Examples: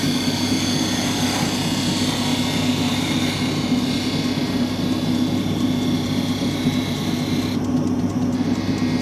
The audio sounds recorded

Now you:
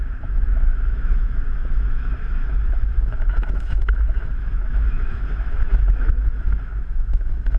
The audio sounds remade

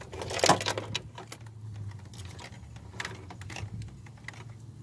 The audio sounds recorded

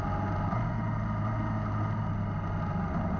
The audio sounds recorded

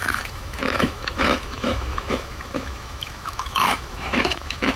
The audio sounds remade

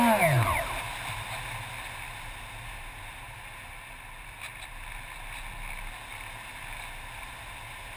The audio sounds recorded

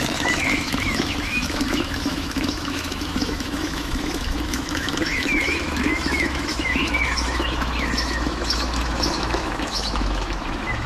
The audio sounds remade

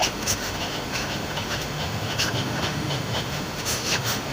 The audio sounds remade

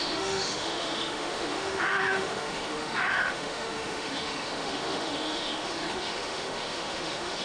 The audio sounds remade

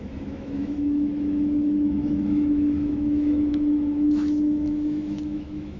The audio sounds remade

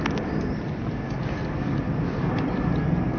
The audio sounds recorded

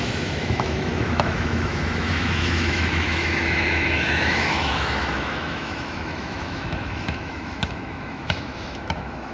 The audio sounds remade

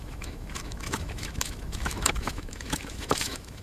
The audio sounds remade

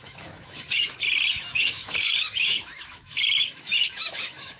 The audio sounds remade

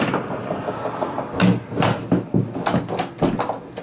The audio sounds recorded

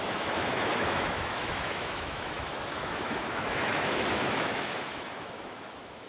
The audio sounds remade